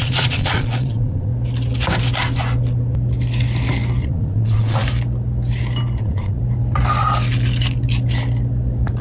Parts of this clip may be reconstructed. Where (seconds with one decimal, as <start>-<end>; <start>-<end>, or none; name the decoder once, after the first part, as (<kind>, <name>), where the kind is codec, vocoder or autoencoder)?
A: 0.0-1.3 (vocoder, Vocos); 4.0-4.8; 6.0-6.4

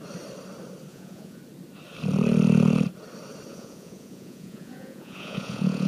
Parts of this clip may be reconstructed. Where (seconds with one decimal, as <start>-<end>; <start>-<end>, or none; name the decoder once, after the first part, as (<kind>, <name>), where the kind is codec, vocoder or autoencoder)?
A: 0.9-1.4 (vocoder, Vocos); 3.5-5.9

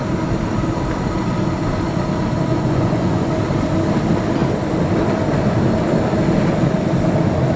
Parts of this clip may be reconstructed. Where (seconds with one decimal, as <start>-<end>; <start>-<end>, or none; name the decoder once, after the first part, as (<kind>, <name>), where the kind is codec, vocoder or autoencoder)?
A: 2.5-3.3 (vocoder, Vocos)

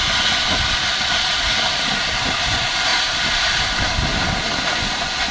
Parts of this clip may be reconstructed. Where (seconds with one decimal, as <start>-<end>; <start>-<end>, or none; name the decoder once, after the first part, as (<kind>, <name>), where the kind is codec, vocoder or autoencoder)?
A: 0.0-0.4 (vocoder, Vocos); 2.5-2.9; 4.7-5.3

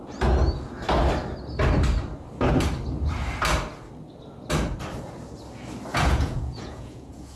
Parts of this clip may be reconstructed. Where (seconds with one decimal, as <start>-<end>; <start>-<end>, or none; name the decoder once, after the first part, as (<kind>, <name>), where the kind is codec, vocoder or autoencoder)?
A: 5.9-7.4 (vocoder, Vocos)

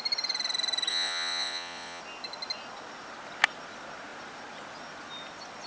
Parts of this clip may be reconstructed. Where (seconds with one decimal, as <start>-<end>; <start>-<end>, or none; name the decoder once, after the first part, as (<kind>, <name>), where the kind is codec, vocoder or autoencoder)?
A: 0.9-2.0 (vocoder, Vocos)

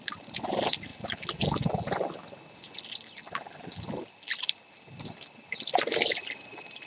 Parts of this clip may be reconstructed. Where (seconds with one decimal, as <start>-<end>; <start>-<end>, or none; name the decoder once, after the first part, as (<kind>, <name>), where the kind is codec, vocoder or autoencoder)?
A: none